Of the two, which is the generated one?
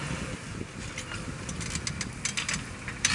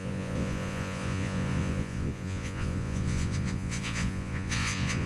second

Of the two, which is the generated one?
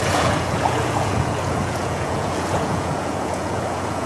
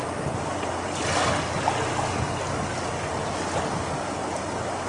first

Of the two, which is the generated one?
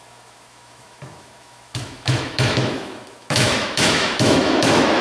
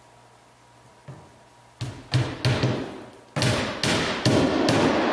first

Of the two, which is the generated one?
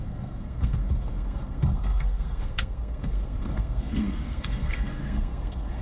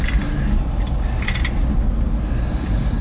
first